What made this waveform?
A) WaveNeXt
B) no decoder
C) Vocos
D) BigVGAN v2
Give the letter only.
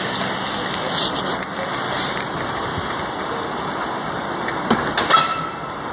B